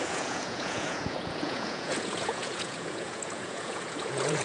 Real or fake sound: fake